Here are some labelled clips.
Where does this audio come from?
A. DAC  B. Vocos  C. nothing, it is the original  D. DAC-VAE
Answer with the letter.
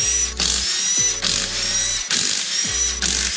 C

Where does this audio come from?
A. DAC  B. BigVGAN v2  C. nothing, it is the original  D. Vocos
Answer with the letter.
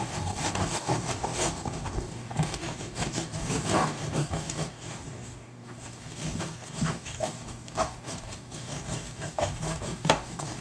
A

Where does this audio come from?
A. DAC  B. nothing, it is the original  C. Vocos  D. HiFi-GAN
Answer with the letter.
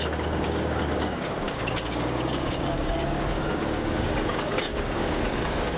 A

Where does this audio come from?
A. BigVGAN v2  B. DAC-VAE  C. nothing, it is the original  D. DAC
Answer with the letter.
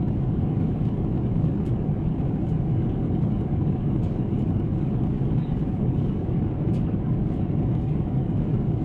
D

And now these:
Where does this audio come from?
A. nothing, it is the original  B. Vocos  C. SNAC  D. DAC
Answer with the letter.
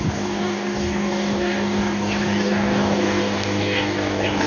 D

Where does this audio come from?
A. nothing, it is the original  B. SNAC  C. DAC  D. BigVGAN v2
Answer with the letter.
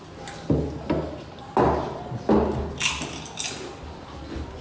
A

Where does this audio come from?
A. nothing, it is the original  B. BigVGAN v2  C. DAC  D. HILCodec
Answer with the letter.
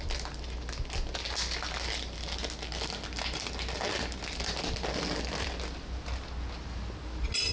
A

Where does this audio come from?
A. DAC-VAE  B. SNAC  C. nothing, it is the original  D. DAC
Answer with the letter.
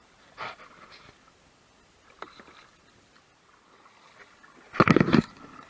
C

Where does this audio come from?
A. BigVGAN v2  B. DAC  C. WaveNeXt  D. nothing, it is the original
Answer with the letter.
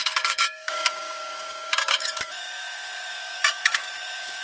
B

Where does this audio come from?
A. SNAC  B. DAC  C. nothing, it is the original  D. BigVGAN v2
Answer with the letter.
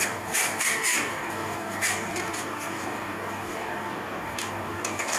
B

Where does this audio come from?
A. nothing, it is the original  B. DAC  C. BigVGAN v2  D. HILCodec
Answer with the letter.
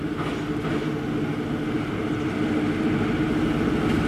A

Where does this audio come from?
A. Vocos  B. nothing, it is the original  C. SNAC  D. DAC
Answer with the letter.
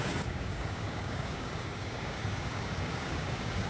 D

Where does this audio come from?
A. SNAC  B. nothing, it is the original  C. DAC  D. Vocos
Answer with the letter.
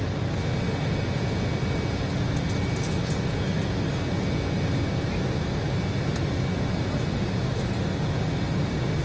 B